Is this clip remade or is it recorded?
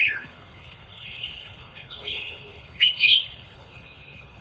remade